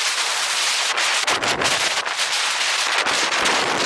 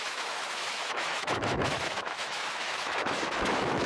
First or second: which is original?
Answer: first